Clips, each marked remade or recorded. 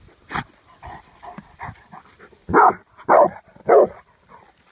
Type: recorded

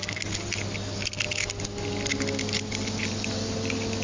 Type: recorded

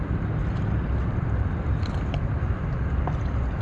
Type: recorded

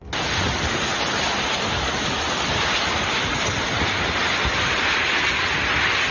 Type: recorded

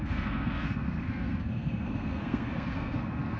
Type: remade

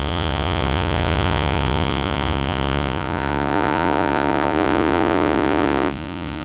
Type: remade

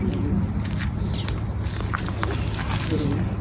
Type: recorded